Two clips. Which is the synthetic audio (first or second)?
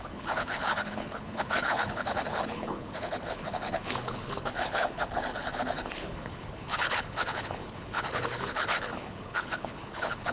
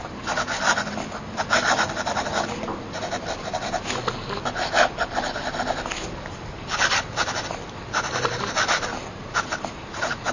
first